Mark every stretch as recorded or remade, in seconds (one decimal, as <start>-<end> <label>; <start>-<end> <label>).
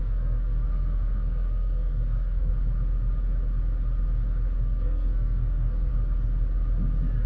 0.0-2.5 remade; 2.5-4.6 recorded; 4.6-5.9 remade; 5.9-7.3 recorded